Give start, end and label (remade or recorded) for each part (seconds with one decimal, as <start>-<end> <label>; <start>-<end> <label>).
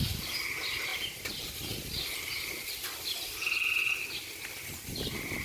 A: 0.0-0.9 recorded; 0.9-2.1 remade; 2.1-5.4 recorded